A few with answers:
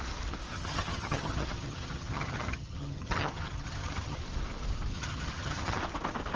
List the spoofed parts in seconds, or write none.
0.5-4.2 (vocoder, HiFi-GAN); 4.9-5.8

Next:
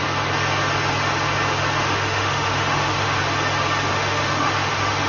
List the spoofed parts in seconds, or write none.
1.8-3.2 (autoencoder, DAC-VAE); 3.9-5.1